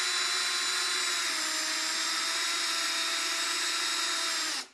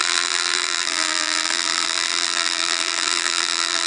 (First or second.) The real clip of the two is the first